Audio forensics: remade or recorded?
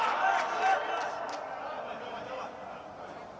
recorded